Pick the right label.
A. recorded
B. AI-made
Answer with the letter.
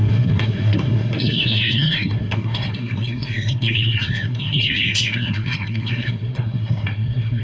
B